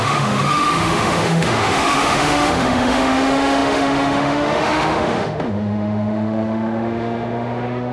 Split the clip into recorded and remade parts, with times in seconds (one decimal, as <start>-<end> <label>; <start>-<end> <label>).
0.0-7.9 remade

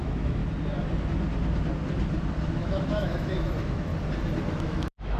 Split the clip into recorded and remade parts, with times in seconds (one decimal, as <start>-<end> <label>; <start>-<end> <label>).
0.0-0.4 remade; 0.4-2.5 recorded; 2.5-3.9 remade; 3.9-4.6 recorded; 4.6-5.2 remade

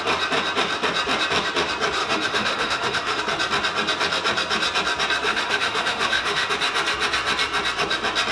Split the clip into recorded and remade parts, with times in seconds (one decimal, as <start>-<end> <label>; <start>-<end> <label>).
0.0-2.0 recorded; 2.0-3.2 remade; 3.2-5.3 recorded; 5.3-6.5 remade; 6.5-8.3 recorded

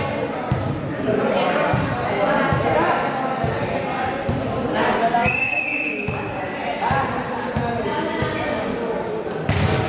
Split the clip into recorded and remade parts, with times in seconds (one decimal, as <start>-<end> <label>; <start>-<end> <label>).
0.0-9.9 recorded

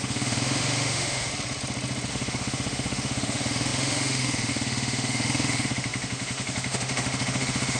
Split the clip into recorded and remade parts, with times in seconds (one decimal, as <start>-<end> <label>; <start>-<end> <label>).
0.0-1.3 remade; 1.3-2.1 recorded; 2.1-7.8 remade

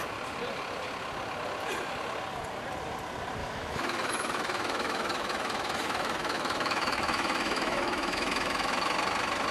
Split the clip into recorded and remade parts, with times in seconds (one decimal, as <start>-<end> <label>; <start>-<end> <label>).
0.0-3.4 recorded; 3.4-8.7 remade; 8.7-9.5 recorded

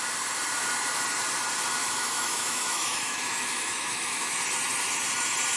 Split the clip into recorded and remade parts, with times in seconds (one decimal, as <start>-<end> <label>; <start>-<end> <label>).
0.0-1.8 recorded; 1.8-4.4 remade; 4.4-5.6 recorded

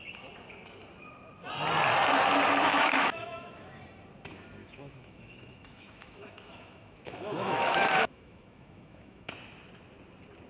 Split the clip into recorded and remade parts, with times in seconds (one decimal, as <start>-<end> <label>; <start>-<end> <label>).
0.0-2.7 recorded; 2.7-3.8 remade; 3.8-4.6 recorded; 4.6-9.3 remade; 9.3-10.5 recorded